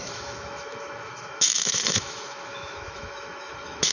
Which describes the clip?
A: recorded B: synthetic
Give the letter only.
B